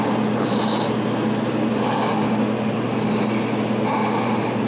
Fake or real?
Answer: real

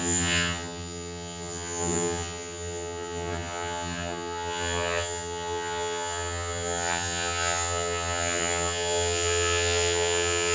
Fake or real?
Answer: fake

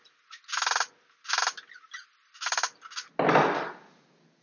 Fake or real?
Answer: real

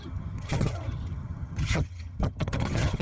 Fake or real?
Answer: fake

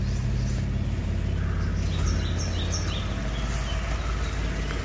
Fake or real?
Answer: real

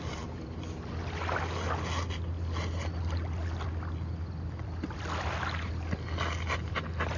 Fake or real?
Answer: real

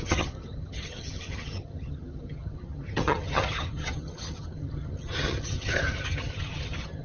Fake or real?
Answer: fake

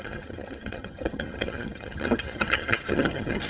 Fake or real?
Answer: fake